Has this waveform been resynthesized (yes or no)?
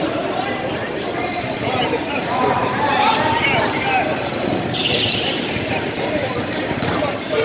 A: yes